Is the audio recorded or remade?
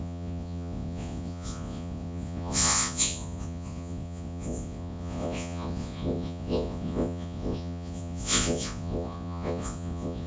remade